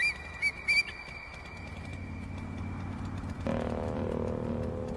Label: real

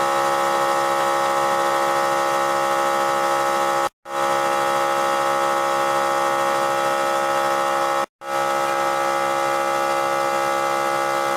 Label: real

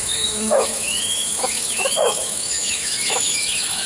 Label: fake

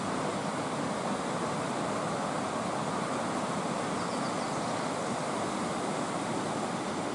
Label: real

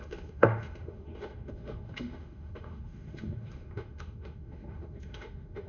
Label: fake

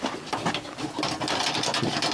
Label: real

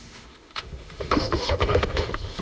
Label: fake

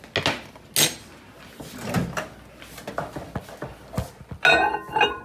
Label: real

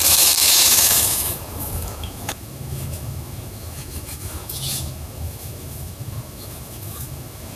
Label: fake